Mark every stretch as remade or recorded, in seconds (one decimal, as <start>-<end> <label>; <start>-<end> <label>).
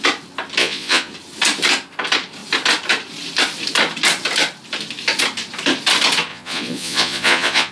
0.0-0.6 recorded; 0.6-1.1 remade; 1.1-6.3 recorded; 6.3-7.7 remade